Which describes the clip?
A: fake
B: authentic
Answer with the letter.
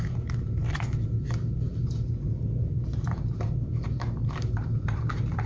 A